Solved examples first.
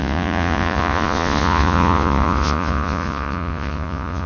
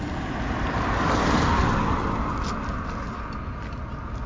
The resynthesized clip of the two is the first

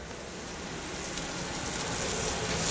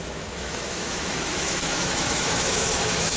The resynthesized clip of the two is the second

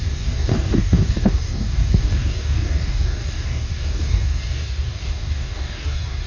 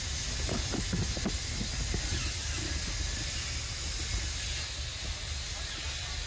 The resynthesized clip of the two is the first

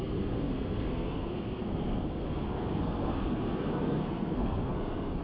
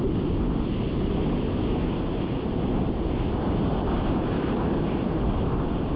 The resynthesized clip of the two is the first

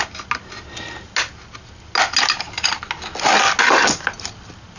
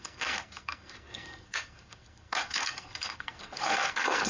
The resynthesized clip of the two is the second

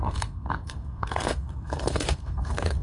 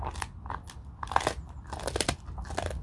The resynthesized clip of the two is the first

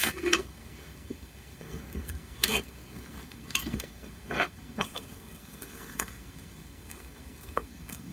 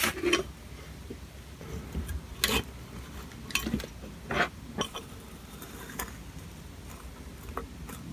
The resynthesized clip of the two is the first